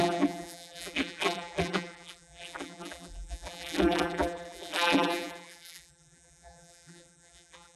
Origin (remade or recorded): remade